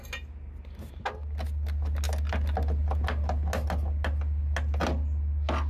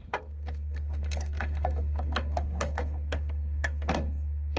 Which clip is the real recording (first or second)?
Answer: first